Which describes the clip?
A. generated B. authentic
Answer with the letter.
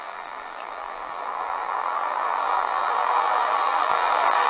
A